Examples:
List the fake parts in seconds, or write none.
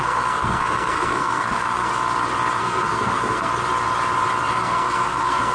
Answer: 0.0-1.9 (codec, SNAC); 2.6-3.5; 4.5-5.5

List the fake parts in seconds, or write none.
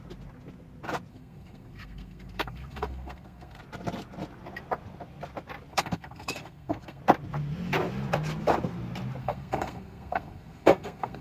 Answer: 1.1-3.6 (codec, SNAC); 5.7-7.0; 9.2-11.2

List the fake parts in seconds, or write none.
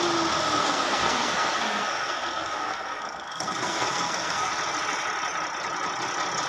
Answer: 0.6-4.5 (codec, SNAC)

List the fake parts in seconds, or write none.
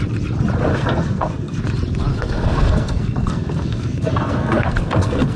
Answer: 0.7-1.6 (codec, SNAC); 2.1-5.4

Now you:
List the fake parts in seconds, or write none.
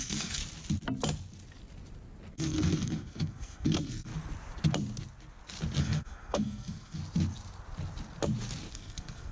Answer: 0.0-0.4 (codec, SNAC); 2.3-4.1; 5.8-7.0; 8.7-9.3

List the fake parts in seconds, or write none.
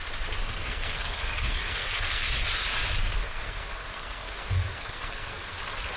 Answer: 0.4-2.3 (codec, SNAC); 3.2-5.6